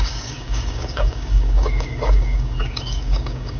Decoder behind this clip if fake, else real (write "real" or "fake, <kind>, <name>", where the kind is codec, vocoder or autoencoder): fake, codec, DAC